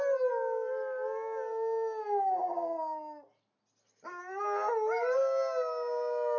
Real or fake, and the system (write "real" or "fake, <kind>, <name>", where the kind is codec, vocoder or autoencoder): real